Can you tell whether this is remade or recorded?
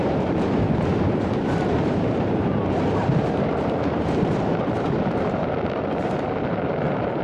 remade